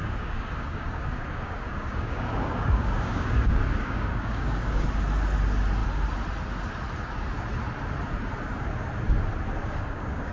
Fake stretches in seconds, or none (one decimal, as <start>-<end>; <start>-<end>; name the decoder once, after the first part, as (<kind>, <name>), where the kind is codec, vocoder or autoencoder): 0.0-4.8 (codec, DAC); 9.6-10.3